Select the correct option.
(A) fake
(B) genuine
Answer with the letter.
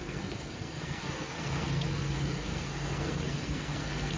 A